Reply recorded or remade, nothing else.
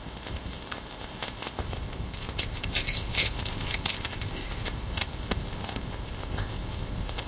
remade